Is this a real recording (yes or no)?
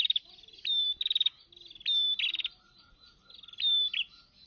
yes